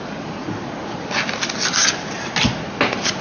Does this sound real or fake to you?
real